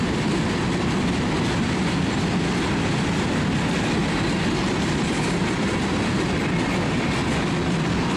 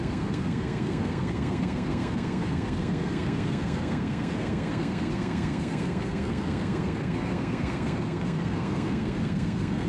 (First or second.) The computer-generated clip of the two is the second